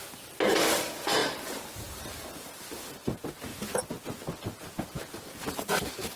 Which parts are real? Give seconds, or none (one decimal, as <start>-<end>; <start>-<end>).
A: 0.0-0.5; 3.5-5.2